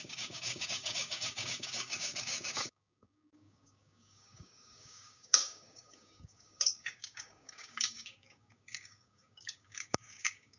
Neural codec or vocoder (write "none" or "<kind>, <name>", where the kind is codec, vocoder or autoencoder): codec, DAC